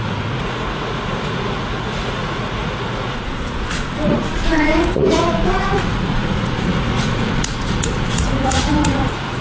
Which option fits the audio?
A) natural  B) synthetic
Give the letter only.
B